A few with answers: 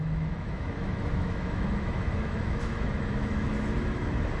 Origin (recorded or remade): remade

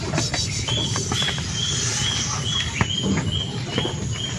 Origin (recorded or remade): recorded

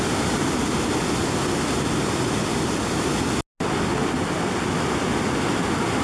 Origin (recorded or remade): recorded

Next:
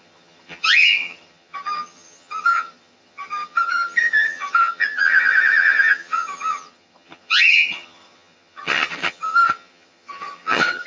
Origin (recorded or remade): remade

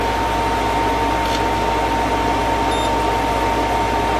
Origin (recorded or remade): recorded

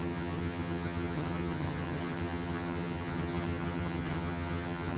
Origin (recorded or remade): remade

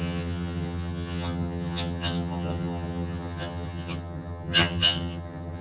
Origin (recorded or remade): remade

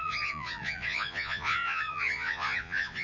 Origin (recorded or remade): remade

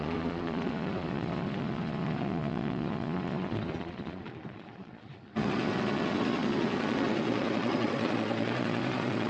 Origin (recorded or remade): remade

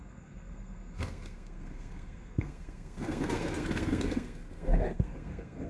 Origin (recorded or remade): remade